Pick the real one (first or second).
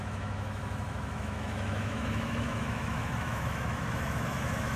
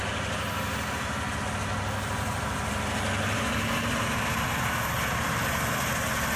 second